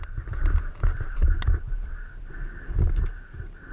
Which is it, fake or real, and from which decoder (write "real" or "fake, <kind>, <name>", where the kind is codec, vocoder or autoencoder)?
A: real